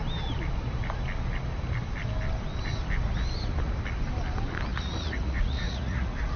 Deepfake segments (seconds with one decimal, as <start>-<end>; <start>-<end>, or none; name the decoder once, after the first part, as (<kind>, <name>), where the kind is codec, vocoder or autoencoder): 4.7-6.4 (vocoder, Vocos)